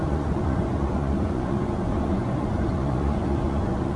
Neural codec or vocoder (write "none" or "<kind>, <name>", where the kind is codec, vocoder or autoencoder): vocoder, Vocos